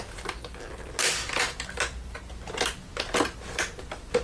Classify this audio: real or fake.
real